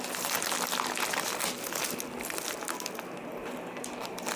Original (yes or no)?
yes